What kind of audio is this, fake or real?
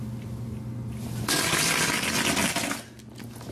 real